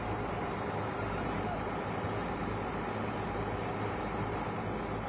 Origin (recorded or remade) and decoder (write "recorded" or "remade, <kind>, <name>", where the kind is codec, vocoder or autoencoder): recorded